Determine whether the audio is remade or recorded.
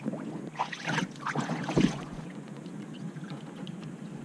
remade